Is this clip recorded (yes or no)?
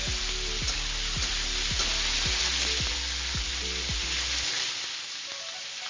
yes